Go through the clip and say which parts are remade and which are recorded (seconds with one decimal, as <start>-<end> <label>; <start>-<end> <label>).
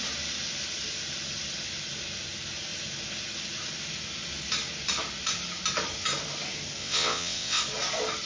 0.0-6.8 recorded; 6.8-7.6 remade; 7.6-8.3 recorded